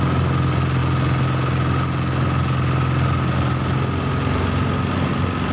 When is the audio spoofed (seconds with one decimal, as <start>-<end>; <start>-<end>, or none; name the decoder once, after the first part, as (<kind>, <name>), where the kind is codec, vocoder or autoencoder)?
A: none